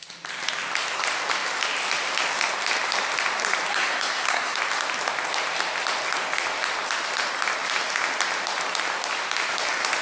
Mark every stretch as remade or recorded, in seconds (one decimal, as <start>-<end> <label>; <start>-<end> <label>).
0.0-3.7 recorded; 3.7-4.6 remade; 4.6-10.0 recorded